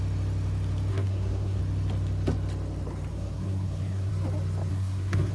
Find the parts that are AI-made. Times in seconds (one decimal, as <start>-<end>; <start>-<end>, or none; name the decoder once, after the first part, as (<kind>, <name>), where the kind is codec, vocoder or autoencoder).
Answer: 0.9-1.6 (codec, SNAC); 3.1-4.1; 4.7-5.3